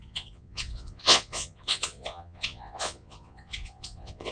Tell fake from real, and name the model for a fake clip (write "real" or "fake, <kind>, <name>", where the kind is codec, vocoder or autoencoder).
fake, vocoder, Vocos